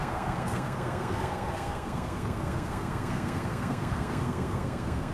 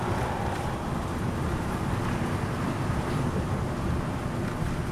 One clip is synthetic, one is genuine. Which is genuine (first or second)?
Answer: second